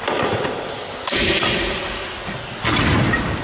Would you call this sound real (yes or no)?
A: yes